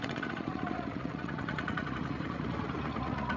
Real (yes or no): no